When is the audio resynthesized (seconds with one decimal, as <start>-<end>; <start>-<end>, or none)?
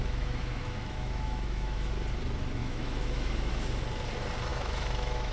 0.0-1.9; 2.6-3.5; 4.5-5.3